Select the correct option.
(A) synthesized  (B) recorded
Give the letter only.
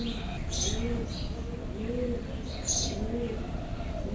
B